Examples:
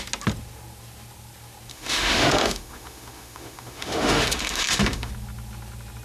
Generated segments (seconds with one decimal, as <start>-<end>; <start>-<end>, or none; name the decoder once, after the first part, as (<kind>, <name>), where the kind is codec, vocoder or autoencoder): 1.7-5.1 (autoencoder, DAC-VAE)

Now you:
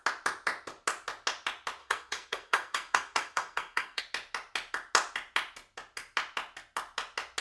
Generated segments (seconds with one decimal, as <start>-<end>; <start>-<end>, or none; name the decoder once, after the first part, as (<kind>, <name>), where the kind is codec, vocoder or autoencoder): 1.8-4.0 (codec, SNAC)

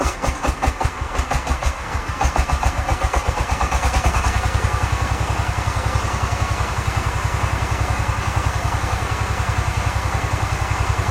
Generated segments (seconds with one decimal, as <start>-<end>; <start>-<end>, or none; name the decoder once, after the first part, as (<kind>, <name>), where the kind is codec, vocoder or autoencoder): 0.0-11.1 (codec, SNAC)

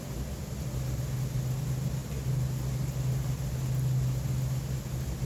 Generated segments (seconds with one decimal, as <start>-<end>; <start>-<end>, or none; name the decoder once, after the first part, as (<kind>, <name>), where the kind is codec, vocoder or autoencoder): none